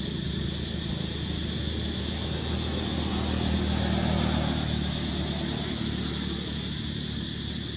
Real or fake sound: real